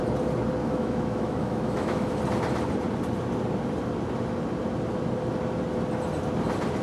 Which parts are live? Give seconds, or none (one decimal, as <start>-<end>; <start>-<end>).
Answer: 0.0-0.6; 2.2-6.8